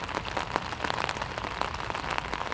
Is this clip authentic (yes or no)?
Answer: yes